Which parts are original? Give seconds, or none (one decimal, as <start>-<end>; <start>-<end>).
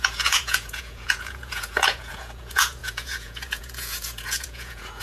none